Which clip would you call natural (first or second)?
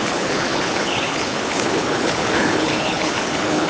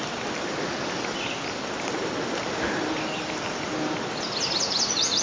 second